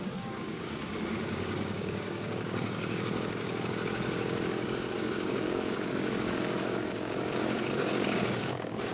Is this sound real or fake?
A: fake